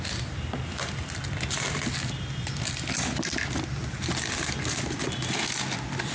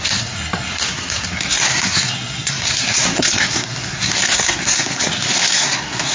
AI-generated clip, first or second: second